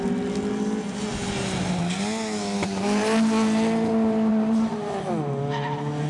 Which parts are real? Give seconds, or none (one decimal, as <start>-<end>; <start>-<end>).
0.0-4.3; 4.9-6.1